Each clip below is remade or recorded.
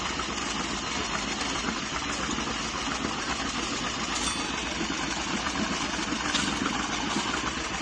recorded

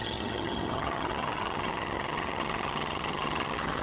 remade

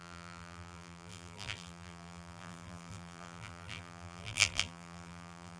remade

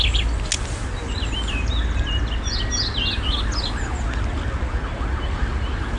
recorded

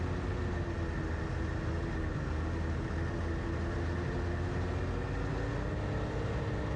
recorded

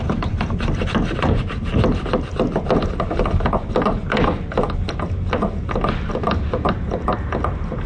recorded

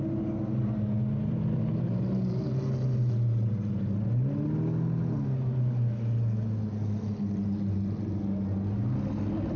recorded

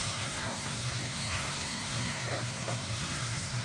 remade